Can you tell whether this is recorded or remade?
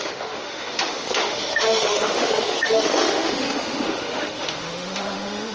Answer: remade